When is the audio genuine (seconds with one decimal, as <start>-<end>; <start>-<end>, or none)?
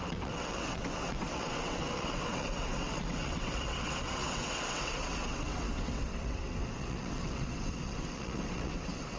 none